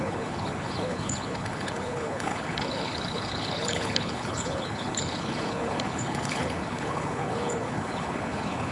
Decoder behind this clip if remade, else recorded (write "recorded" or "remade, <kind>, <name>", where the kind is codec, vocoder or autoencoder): remade, codec, HILCodec